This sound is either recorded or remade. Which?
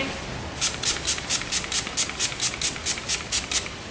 recorded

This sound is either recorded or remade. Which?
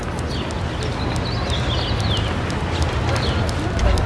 recorded